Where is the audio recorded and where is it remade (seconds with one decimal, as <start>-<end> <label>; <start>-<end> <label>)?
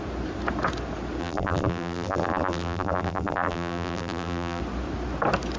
0.0-1.2 recorded; 1.2-4.6 remade; 4.6-5.6 recorded